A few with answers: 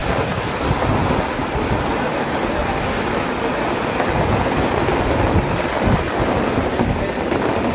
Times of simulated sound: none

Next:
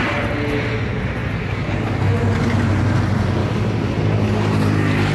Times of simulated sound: 1.2-2.2 (codec, DAC); 3.4-3.9

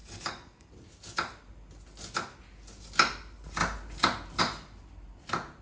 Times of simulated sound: 0.0-0.7 (codec, DAC)

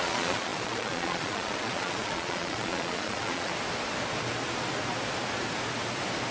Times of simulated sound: 0.0-3.5 (vocoder, Vocos)

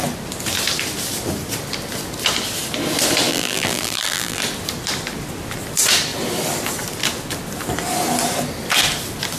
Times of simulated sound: 3.3-4.4 (vocoder, BigVGAN v2)